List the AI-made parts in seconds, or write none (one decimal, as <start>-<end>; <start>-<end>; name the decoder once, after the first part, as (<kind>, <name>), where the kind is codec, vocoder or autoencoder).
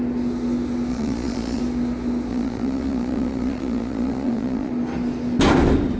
0.9-1.6 (vocoder, Vocos); 2.3-4.7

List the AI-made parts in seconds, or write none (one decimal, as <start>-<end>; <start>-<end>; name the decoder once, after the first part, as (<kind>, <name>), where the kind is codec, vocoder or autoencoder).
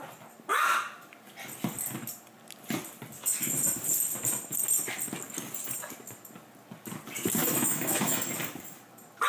7.4-8.3 (autoencoder, DAC-VAE)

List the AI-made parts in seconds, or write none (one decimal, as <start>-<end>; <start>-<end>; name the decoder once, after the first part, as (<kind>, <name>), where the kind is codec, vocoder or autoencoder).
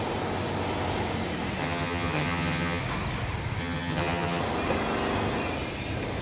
1.6-2.8 (vocoder, HiFi-GAN); 3.6-4.4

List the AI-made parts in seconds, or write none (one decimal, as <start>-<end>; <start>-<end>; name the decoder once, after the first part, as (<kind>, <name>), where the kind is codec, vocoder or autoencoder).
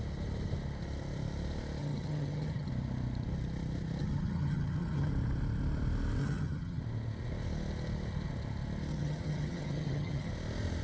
1.8-2.7 (vocoder, HiFi-GAN); 4.0-5.1; 6.2-6.8; 8.9-10.3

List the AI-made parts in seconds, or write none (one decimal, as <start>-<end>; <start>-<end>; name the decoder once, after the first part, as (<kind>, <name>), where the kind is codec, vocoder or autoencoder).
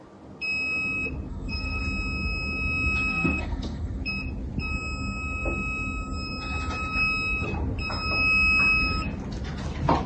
1.3-1.8 (codec, SNAC); 3.1-4.0